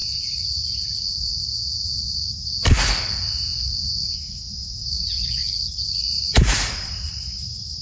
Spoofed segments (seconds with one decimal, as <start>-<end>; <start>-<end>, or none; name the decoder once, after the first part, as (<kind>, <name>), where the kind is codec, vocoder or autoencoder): 0.0-4.8 (vocoder, BigVGAN v2); 5.4-7.8